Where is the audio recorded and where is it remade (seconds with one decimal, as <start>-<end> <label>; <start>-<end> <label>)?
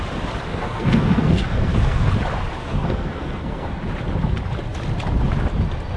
0.0-0.5 recorded; 0.5-2.1 remade; 2.1-2.6 recorded; 2.6-3.8 remade; 3.8-6.0 recorded